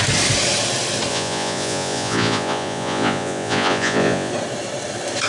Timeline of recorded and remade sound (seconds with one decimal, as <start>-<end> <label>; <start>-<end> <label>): 0.0-1.1 recorded; 1.1-4.3 remade; 4.3-5.3 recorded